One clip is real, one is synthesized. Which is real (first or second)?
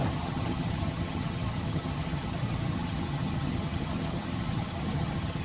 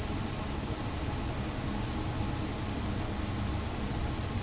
second